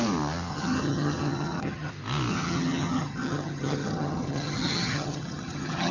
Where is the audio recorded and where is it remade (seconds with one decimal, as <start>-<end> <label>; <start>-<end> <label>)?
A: 0.0-0.5 recorded; 0.5-1.9 remade; 1.9-2.3 recorded; 2.3-5.9 remade